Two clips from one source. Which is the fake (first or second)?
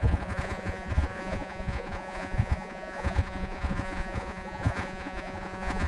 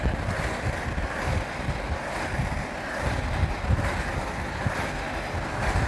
first